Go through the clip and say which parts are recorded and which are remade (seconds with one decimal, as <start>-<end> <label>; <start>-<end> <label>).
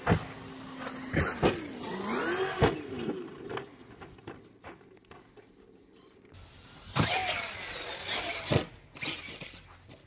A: 0.0-10.1 recorded